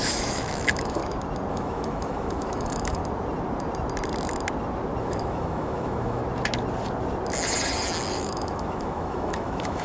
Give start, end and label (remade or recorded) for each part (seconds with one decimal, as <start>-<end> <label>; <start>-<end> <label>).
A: 0.0-1.0 remade; 1.0-1.5 recorded; 1.5-3.0 remade; 3.0-5.0 recorded; 5.0-6.2 remade; 6.2-8.1 recorded; 8.1-9.8 remade